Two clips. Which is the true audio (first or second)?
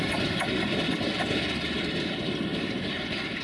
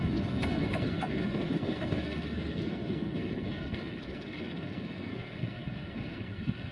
first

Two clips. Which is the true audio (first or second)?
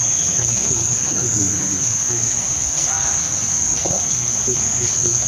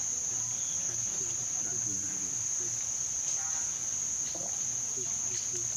second